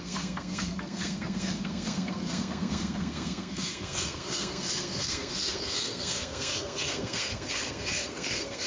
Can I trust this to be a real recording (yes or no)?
no